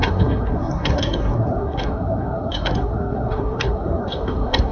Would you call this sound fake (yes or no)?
yes